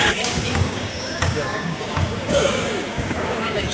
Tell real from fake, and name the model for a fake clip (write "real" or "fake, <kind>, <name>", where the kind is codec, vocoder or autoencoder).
fake, codec, DAC